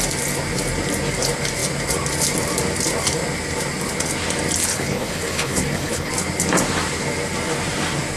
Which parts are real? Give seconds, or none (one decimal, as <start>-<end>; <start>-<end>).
0.0-4.7; 6.1-8.2